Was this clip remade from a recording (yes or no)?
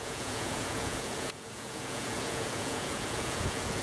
yes